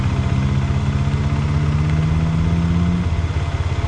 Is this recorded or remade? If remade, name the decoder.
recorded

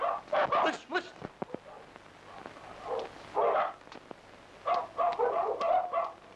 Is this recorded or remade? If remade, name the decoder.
recorded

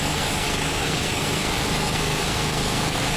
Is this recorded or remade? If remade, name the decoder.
remade, codec, SNAC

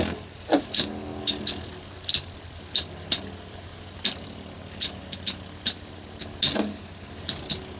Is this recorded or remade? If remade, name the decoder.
recorded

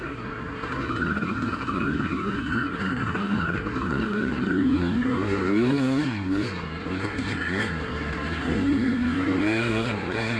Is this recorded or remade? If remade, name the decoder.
remade, codec, SNAC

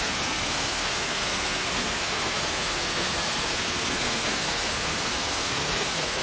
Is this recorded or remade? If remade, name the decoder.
remade, codec, SNAC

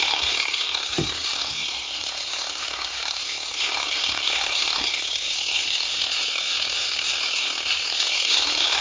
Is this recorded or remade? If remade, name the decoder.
remade, codec, SNAC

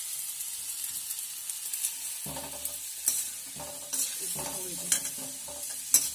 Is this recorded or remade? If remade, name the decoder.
recorded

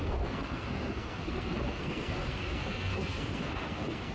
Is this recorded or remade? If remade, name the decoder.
remade, codec, SNAC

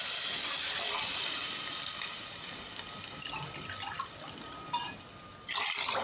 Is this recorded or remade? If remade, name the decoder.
recorded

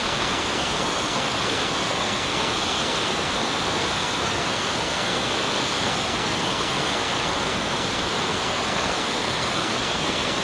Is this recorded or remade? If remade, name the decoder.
remade, codec, SNAC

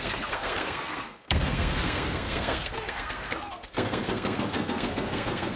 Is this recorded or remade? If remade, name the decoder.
remade, codec, SNAC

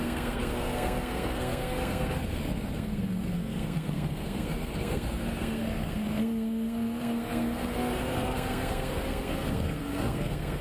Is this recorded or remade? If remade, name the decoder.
remade, codec, SNAC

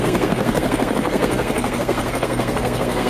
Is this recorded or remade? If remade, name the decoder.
remade, codec, SNAC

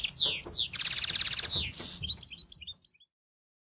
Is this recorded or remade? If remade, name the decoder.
recorded